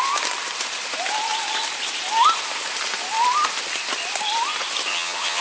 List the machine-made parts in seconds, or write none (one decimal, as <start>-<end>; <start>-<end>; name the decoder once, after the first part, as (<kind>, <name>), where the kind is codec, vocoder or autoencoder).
4.9-5.4 (vocoder, HiFi-GAN)